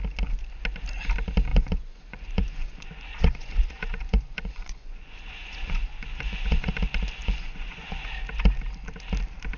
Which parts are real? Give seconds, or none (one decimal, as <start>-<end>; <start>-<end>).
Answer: 0.0-1.5; 6.7-7.2; 8.0-9.6